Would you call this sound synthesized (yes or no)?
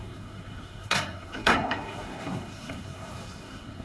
yes